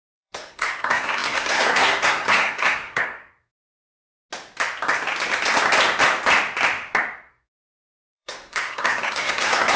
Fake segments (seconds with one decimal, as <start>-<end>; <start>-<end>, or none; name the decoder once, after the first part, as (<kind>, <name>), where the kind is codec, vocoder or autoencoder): 0.0-4.1 (codec, SNAC); 7.3-9.8